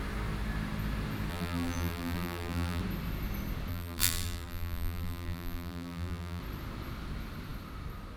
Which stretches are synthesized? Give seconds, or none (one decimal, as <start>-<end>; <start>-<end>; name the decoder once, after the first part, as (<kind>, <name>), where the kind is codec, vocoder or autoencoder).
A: 1.3-2.8 (vocoder, BigVGAN v2); 3.7-6.4